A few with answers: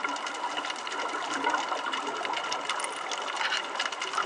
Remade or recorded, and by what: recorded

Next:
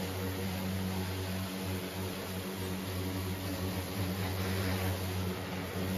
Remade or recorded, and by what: recorded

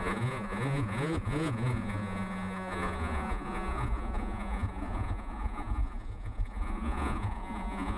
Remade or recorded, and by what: remade, vocoder, Vocos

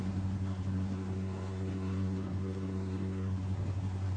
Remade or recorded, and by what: remade, codec, SNAC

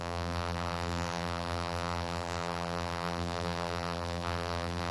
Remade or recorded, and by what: remade, vocoder, BigVGAN v2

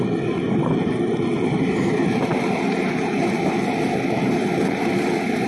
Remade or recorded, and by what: remade, vocoder, BigVGAN v2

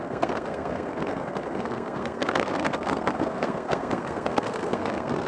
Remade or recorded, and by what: remade, codec, SNAC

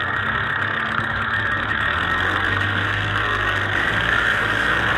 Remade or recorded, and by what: remade, codec, SNAC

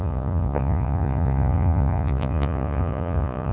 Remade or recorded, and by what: remade, vocoder, Vocos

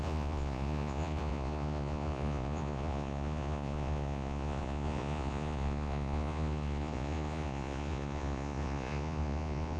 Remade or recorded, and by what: remade, vocoder, Vocos